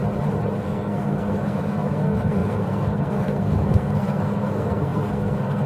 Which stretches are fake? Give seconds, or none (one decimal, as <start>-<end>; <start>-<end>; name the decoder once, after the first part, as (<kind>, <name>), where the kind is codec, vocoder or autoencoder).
0.6-5.7 (codec, SNAC)